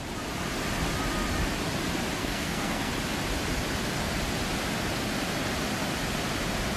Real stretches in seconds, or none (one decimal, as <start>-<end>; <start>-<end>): 0.0-2.2; 2.9-6.8